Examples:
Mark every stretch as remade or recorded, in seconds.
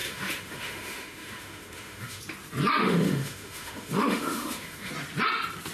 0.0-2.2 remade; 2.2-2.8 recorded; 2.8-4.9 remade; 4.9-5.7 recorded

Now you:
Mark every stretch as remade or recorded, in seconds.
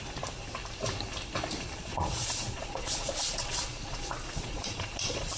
0.0-1.9 recorded; 1.9-5.4 remade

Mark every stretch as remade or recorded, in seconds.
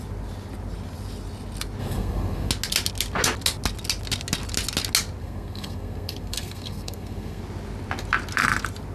0.0-1.8 recorded; 1.8-2.5 remade; 2.5-5.2 recorded; 5.2-7.4 remade; 7.4-8.9 recorded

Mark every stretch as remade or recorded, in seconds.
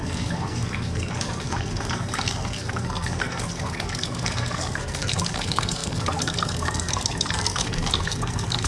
0.0-8.7 remade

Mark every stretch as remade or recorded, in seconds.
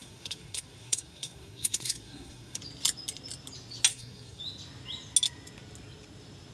0.0-2.6 remade; 2.6-3.9 recorded; 3.9-4.4 remade; 4.4-6.5 recorded